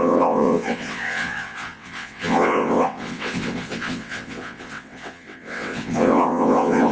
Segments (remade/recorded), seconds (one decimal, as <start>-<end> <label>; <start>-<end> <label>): 0.0-6.9 remade